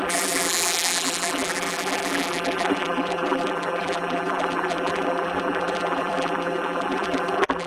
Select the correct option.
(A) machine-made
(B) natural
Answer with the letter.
A